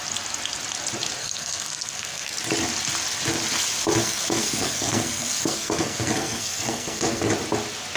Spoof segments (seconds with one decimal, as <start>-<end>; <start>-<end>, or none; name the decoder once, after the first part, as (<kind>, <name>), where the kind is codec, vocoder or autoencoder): 1.2-2.4 (codec, SNAC); 4.0-7.3